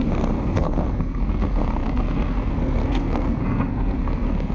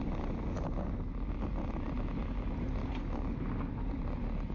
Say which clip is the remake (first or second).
first